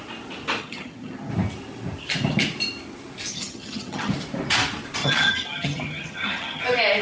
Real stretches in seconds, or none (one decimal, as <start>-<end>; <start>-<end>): 0.0-0.6; 1.3-3.3; 4.1-5.0; 6.6-7.0